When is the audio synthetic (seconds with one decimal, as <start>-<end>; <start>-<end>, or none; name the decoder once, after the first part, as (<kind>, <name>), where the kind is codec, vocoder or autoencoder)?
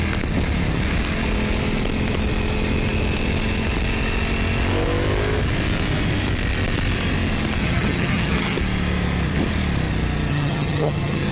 7.6-8.6 (vocoder, HiFi-GAN); 10.3-11.3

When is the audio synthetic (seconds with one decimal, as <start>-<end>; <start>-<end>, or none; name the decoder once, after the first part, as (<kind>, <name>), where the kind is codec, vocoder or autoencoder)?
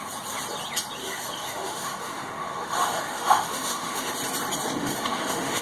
1.0-4.1 (autoencoder, DAC-VAE); 4.8-5.6